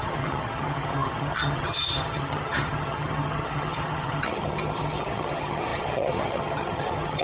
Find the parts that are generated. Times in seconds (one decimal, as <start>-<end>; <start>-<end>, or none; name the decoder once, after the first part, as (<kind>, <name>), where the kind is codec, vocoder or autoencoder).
0.0-7.2 (vocoder, HiFi-GAN)